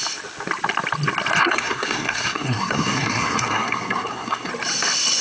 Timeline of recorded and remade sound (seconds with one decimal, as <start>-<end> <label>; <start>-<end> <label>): 0.0-1.4 recorded; 1.4-4.5 remade; 4.5-5.2 recorded